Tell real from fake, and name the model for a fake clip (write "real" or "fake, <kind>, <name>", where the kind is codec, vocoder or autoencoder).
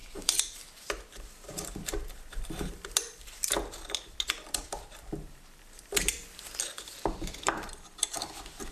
fake, vocoder, BigVGAN v2